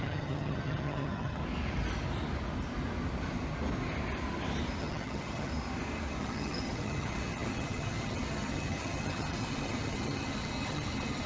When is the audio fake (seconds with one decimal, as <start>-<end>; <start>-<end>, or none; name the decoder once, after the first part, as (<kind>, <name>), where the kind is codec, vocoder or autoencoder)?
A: 0.0-1.4 (vocoder, HiFi-GAN); 4.8-5.5; 6.2-11.3